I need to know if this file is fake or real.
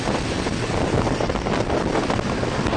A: fake